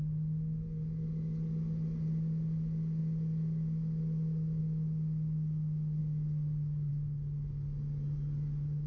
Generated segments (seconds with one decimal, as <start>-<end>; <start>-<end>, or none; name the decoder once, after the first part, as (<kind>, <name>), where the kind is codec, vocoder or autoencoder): none